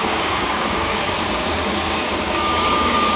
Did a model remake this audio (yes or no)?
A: yes